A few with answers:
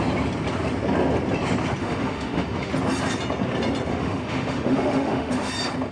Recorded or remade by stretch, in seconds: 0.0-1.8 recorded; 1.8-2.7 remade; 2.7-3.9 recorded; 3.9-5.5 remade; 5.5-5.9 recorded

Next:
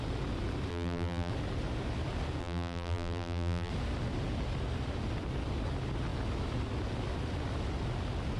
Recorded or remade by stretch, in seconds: 0.0-0.7 recorded; 0.7-1.3 remade; 1.3-2.4 recorded; 2.4-3.7 remade; 3.7-8.4 recorded